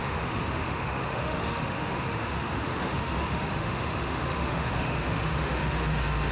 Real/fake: fake